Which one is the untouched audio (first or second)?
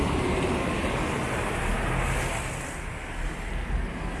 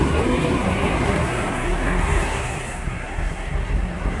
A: first